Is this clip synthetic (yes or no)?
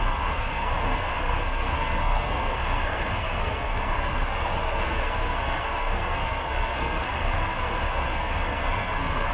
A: yes